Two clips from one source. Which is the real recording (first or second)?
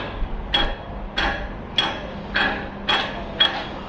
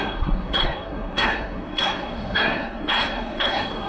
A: first